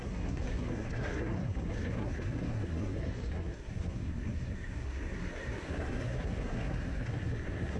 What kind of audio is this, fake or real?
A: fake